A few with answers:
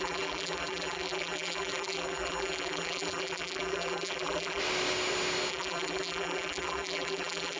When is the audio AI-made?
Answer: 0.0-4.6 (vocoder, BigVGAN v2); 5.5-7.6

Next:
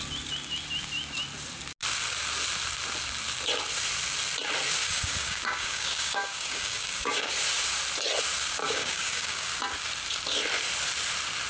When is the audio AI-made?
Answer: 4.8-7.3 (codec, DAC); 8.6-9.5

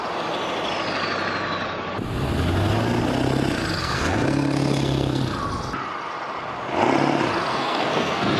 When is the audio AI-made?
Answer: 3.8-5.2 (codec, SNAC); 7.5-8.4

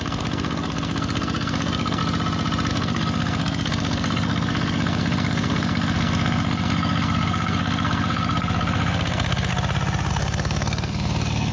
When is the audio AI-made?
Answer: 0.0-2.0 (codec, SNAC); 2.7-9.5; 10.1-11.5

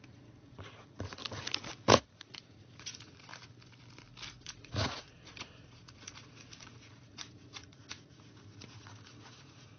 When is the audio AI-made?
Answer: 0.0-1.2 (vocoder, Vocos); 1.9-3.3; 4.4-9.8